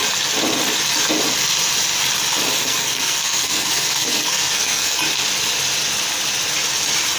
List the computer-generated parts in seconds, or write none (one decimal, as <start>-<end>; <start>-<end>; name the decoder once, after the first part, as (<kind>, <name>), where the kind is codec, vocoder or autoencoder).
2.6-5.0 (codec, SNAC)